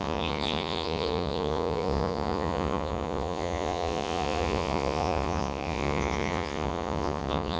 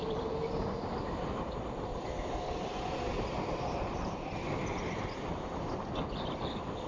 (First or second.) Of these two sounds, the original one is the second